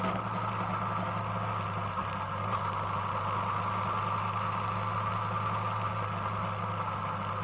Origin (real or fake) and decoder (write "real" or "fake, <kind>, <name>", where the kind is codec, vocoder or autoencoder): real